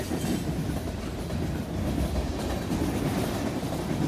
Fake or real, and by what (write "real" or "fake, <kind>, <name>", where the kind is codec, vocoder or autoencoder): real